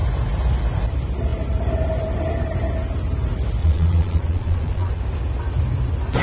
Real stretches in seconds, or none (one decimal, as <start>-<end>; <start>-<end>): 0.0-3.6; 5.0-6.2